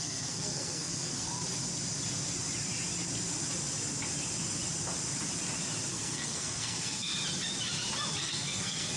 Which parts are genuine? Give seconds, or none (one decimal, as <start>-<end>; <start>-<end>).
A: 1.4-5.9; 7.1-8.2